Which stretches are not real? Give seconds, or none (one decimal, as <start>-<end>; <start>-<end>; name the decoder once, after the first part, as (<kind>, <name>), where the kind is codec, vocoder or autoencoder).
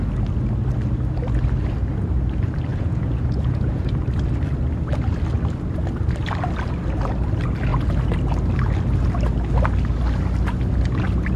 2.7-3.9 (vocoder, Vocos)